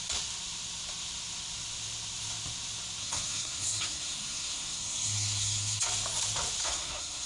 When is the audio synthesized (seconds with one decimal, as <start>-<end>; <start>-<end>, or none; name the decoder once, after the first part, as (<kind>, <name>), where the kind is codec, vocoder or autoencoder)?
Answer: 3.0-5.8 (codec, SNAC); 6.6-7.3